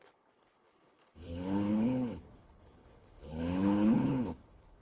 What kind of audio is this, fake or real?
fake